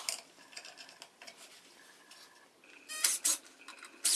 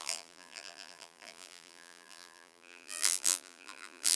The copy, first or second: second